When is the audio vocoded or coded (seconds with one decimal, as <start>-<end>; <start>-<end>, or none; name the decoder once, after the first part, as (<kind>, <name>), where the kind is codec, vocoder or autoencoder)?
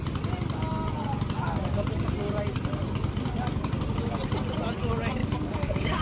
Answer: 5.2-6.0 (codec, DAC)